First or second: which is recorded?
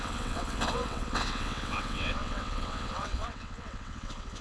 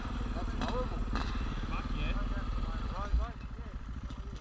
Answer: second